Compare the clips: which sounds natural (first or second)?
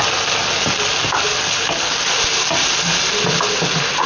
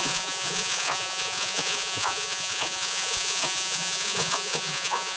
first